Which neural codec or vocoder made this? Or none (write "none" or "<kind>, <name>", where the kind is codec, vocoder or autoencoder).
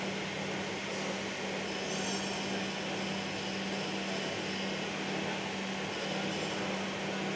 none